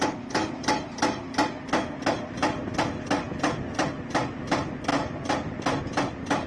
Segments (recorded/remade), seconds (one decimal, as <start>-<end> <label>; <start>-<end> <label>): 0.0-4.9 recorded; 4.9-5.8 remade; 5.8-6.5 recorded